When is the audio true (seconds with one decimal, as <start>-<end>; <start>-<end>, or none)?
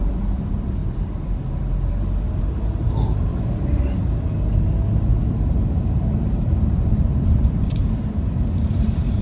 0.8-2.4; 3.3-5.1